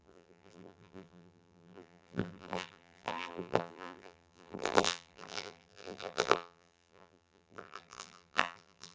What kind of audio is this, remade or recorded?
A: remade